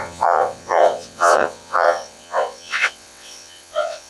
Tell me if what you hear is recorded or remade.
remade